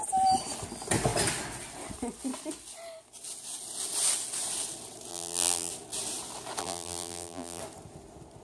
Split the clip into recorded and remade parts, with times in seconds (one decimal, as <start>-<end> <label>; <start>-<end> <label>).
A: 0.0-5.1 recorded; 5.1-5.7 remade; 5.7-6.6 recorded; 6.6-7.6 remade; 7.6-8.4 recorded